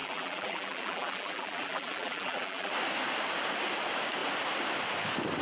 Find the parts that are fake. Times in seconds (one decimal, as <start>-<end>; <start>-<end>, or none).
0.0-2.7